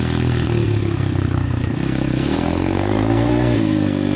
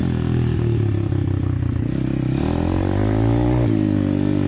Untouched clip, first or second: second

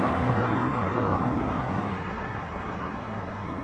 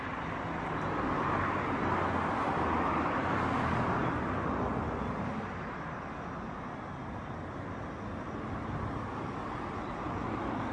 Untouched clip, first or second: second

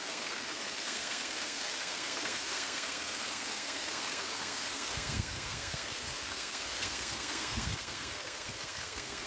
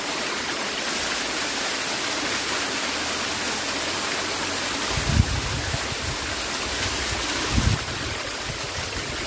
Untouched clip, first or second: second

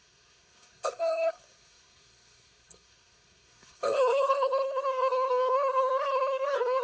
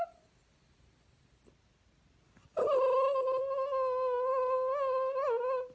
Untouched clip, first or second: second